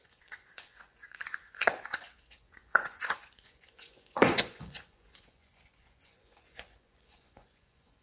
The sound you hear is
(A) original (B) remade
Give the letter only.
B